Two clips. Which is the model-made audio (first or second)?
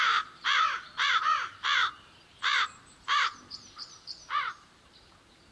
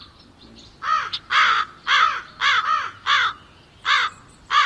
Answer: first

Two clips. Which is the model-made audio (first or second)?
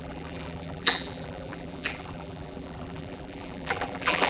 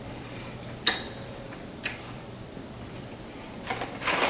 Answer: first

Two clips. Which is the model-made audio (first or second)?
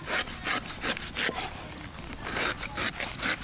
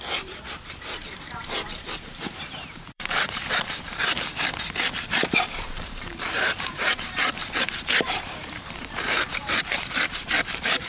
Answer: second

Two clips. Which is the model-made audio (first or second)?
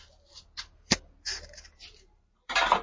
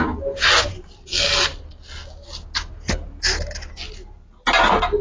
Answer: first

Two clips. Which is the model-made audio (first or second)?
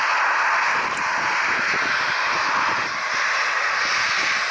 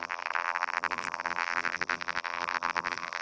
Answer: second